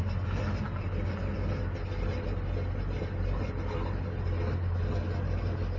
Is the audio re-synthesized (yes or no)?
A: no